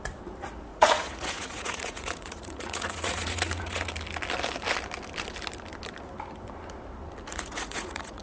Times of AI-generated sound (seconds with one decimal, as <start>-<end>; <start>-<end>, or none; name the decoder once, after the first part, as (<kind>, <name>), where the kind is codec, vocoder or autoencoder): 0.7-3.9 (vocoder, Vocos); 7.3-8.2